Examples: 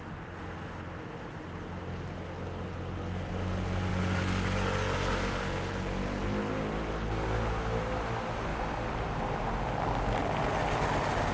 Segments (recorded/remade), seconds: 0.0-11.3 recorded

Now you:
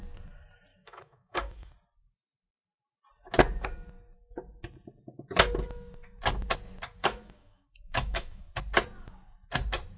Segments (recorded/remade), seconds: 0.0-0.7 recorded; 0.7-1.7 remade; 1.7-7.0 recorded; 7.0-8.4 remade; 8.4-10.0 recorded

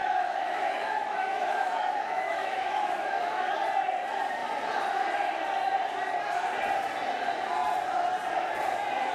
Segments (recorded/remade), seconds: 0.0-3.5 remade; 3.5-9.1 recorded

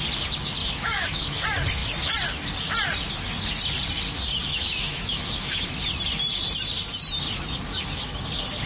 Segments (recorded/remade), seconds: 0.0-0.6 recorded; 0.6-1.4 remade; 1.4-4.5 recorded; 4.5-5.6 remade; 5.6-8.7 recorded